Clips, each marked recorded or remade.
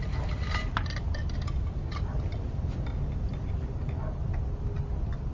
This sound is recorded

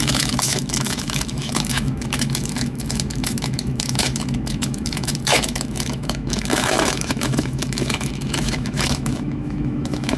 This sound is remade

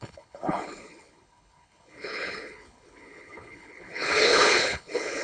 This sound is remade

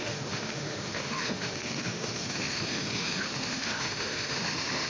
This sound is remade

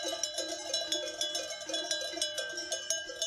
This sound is recorded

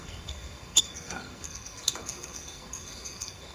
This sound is remade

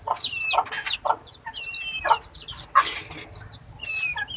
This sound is recorded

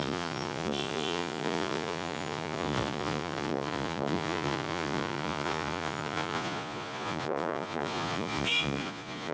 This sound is remade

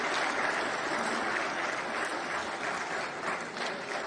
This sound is recorded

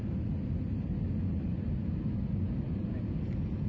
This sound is recorded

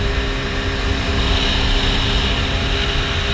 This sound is recorded